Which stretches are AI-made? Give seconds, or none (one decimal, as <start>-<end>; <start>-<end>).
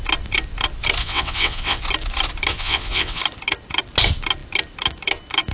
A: 1.0-1.8; 2.5-3.2